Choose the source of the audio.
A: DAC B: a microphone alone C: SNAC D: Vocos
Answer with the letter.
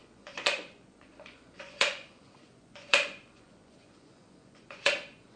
D